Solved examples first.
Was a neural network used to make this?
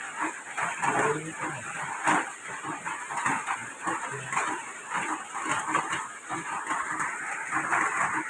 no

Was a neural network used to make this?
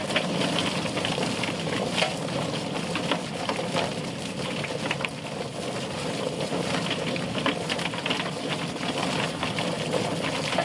no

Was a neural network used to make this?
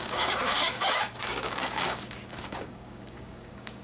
yes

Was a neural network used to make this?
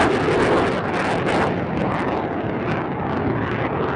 no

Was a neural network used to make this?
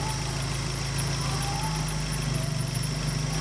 no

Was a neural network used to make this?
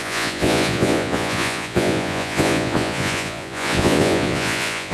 yes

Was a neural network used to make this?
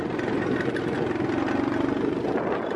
no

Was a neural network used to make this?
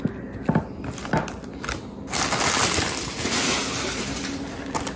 no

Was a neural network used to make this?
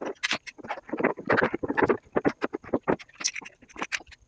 no